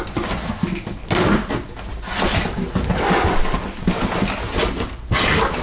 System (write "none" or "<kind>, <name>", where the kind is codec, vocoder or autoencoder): none